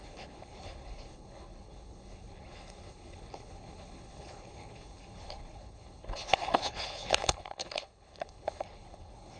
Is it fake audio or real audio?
fake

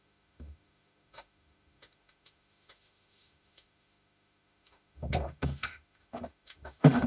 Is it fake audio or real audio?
fake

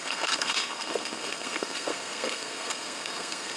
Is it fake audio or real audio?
fake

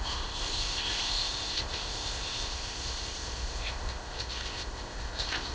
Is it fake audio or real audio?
fake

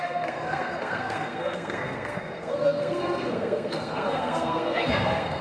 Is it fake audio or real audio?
fake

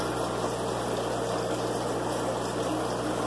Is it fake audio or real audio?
real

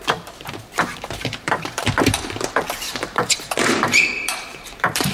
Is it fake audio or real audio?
fake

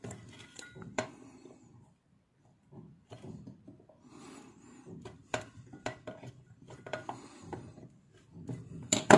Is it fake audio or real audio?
fake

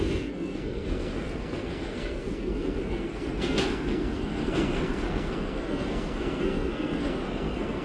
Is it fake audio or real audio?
fake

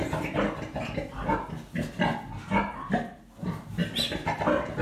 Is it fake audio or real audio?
real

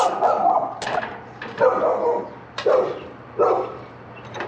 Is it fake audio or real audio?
real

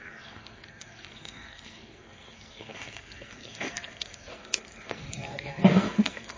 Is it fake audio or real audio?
fake